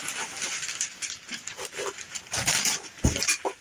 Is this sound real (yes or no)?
no